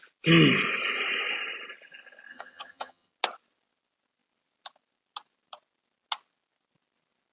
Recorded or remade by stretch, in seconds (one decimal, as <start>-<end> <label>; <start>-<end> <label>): 0.0-2.3 recorded; 2.3-3.1 remade; 3.1-7.3 recorded

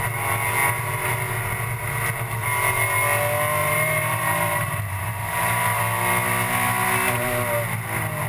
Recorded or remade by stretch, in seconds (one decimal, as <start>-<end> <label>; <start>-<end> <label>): 0.0-3.6 recorded; 3.6-5.8 remade; 5.8-8.3 recorded

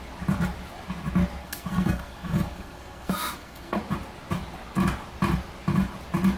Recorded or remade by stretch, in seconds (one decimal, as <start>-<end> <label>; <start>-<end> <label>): 0.0-1.4 recorded; 1.4-3.8 remade; 3.8-6.4 recorded

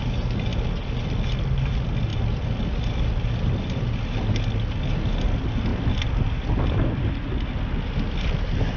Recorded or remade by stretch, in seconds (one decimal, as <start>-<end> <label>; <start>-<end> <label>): 0.0-8.8 recorded

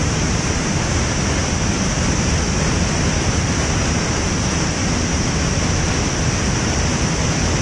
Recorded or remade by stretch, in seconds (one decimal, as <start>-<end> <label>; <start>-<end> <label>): 0.0-1.4 remade; 1.4-2.6 recorded; 2.6-4.8 remade; 4.8-5.9 recorded; 5.9-7.6 remade